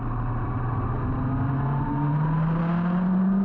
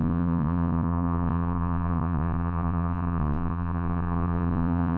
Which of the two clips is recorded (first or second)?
first